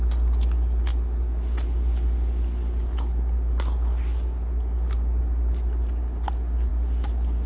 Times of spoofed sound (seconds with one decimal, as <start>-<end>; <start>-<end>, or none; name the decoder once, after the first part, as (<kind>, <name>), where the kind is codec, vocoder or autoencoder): none